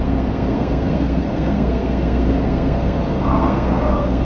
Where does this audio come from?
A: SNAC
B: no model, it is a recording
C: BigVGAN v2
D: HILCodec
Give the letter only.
A